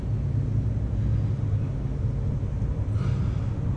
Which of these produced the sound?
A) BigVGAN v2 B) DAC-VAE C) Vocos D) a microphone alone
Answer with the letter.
D